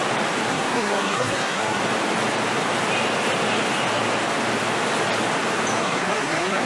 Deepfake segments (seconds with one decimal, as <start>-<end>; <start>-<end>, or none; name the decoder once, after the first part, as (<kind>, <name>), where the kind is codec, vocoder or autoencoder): 0.5-1.8 (codec, SNAC); 5.8-6.7